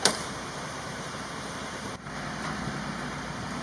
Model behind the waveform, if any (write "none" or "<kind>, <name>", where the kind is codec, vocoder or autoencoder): vocoder, BigVGAN v2